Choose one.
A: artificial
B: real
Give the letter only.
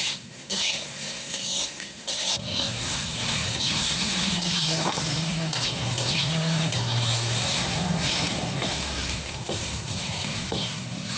A